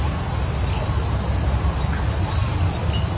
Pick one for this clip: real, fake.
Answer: real